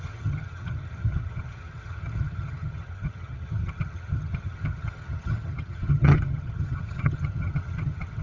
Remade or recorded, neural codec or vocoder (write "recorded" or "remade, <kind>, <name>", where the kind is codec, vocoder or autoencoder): remade, vocoder, HiFi-GAN